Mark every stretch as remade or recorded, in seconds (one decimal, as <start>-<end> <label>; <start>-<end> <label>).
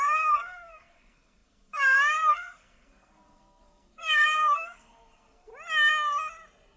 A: 0.0-5.5 remade; 5.5-6.8 recorded